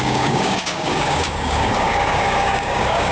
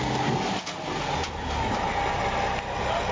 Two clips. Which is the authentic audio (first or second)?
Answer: second